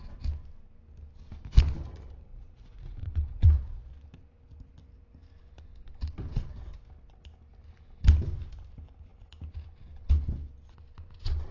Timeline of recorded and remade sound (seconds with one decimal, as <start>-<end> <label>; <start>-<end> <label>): 0.0-2.3 recorded; 2.3-3.9 remade; 3.9-11.5 recorded